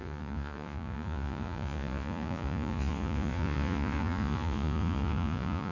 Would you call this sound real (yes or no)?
no